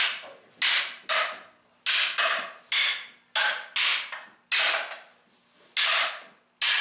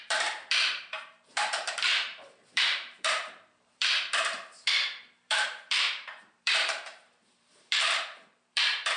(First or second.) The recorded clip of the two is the first